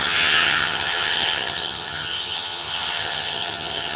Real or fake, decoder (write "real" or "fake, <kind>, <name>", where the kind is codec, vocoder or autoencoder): fake, vocoder, HiFi-GAN